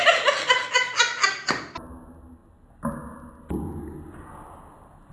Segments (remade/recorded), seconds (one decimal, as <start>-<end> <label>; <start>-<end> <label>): 0.0-5.1 recorded